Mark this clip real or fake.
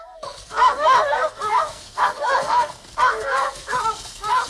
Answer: fake